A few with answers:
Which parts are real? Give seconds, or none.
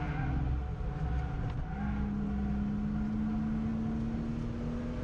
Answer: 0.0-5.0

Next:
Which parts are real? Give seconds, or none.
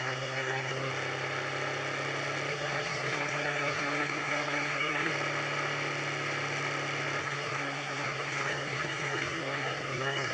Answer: 0.9-2.5; 5.1-7.2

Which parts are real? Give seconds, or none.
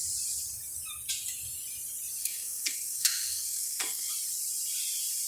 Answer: 0.0-2.2; 4.1-5.3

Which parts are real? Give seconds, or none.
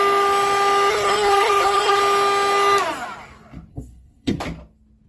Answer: 0.0-0.9; 2.0-3.7; 4.4-5.1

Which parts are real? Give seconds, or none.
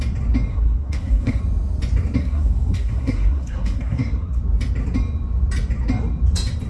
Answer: 0.0-0.5; 1.4-2.2; 4.4-6.7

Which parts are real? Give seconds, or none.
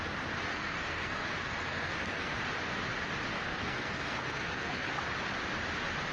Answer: 0.0-0.5; 2.4-3.3; 4.9-6.1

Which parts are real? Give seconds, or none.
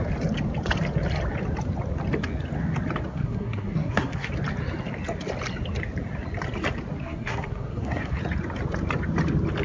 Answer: 0.0-3.1; 4.3-7.0; 8.2-9.6